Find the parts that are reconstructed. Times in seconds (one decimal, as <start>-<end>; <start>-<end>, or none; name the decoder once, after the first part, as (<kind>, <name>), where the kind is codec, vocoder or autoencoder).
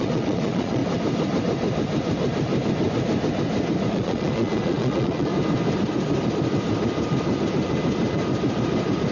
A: 0.0-0.8 (vocoder, Vocos); 3.9-5.3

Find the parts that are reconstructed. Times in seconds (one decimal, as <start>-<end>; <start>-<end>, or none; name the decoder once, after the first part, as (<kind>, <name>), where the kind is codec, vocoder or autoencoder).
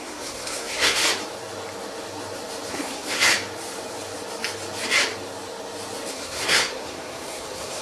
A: 0.0-1.0 (codec, SNAC); 2.7-3.3; 6.1-7.8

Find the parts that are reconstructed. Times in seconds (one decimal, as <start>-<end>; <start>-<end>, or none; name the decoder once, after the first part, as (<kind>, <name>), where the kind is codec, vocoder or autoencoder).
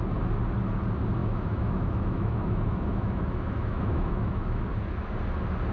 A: 1.2-4.6 (autoencoder, DAC-VAE)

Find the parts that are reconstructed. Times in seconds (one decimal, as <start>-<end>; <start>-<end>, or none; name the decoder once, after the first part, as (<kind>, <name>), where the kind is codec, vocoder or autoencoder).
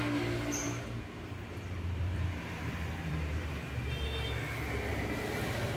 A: 0.6-3.5 (vocoder, BigVGAN v2); 4.9-5.8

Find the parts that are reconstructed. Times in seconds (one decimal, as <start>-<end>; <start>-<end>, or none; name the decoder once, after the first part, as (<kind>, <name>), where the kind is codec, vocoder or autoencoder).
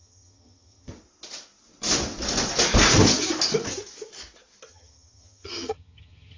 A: 0.0-0.9 (vocoder, HiFi-GAN); 4.7-6.4